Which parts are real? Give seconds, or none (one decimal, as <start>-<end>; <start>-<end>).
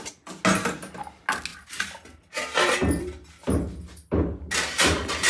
0.0-5.3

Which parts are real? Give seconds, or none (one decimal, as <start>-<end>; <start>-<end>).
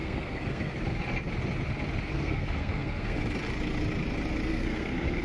0.7-2.1; 3.2-4.5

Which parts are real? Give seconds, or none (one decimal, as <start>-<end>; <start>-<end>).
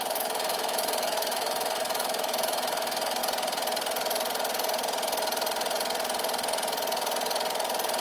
3.2-8.0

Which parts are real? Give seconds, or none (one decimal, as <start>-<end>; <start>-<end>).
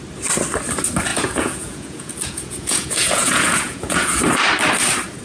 0.0-1.1; 4.2-5.2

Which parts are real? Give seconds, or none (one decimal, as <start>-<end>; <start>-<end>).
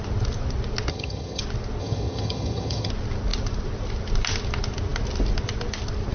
0.0-0.9; 1.4-1.8; 2.9-6.1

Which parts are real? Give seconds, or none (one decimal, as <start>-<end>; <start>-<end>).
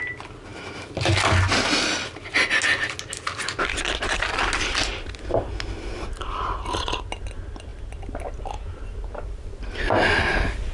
0.0-10.7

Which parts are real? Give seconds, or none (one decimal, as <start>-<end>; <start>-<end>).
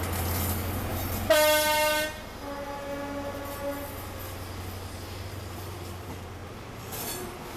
0.9-5.3; 6.4-7.6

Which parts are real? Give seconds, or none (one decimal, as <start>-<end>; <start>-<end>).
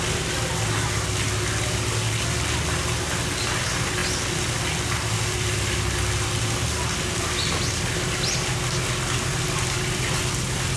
0.0-10.8